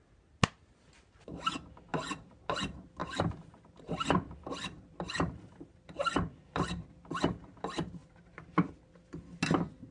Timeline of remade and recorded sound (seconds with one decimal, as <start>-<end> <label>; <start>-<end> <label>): 0.0-1.9 recorded; 1.9-2.6 remade; 2.6-3.0 recorded; 3.0-7.1 remade; 7.1-8.0 recorded; 8.0-8.7 remade; 8.7-9.9 recorded